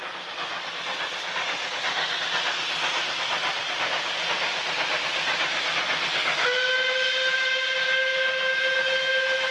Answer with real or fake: real